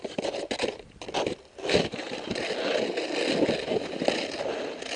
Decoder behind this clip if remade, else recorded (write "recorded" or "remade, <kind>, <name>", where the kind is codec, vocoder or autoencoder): recorded